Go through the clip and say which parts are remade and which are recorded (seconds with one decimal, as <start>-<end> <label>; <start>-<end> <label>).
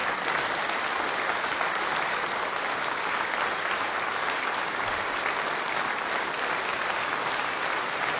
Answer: 0.0-8.2 recorded